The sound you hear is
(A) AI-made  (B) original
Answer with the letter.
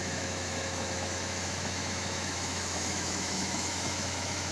A